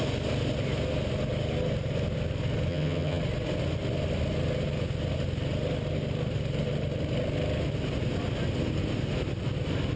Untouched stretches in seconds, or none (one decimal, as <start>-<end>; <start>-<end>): 0.0-2.7; 3.2-10.0